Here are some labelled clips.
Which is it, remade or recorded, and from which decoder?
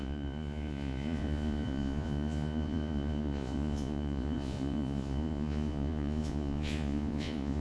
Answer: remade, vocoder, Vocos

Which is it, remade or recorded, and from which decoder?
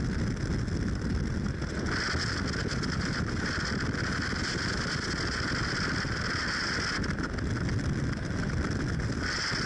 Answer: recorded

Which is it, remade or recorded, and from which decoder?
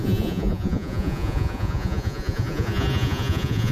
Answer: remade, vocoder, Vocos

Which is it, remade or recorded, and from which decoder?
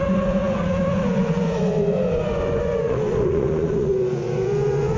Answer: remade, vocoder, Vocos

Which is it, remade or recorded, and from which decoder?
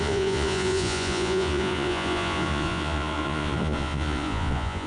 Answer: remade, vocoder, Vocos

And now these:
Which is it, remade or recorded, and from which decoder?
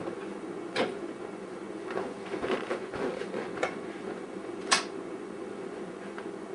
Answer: remade, vocoder, Vocos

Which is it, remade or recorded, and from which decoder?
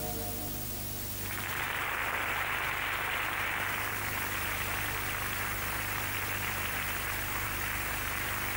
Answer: recorded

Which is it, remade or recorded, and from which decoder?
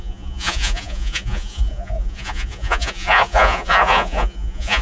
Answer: remade, vocoder, Vocos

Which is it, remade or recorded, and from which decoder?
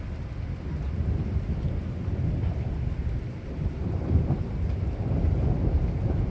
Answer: recorded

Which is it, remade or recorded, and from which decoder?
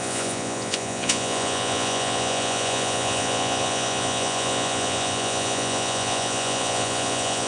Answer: remade, vocoder, Vocos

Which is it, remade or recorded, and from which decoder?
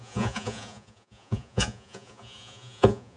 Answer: remade, vocoder, Vocos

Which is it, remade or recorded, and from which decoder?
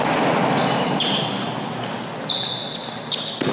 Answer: recorded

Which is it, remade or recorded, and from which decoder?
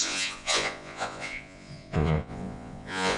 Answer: remade, vocoder, Vocos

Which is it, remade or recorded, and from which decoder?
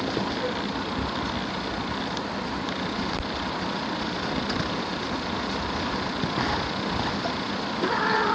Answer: recorded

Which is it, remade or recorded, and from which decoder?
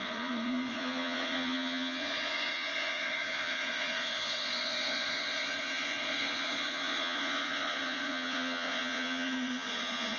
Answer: remade, vocoder, Vocos